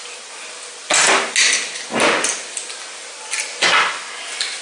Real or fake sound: real